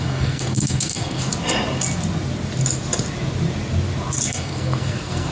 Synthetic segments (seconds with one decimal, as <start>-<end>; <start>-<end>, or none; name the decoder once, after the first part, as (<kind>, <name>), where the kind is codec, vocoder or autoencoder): 0.0-1.3 (codec, SNAC); 4.3-5.3